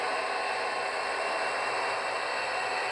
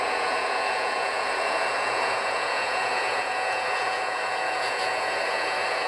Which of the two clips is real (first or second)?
first